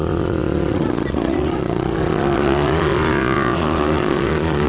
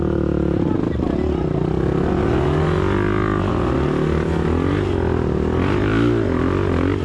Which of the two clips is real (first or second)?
second